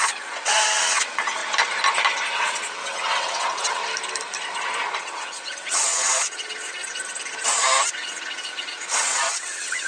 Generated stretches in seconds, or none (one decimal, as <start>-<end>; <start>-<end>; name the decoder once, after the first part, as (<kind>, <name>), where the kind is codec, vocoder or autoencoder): 0.0-1.4 (vocoder, WaveNeXt); 2.3-3.8; 5.0-6.8; 7.9-9.9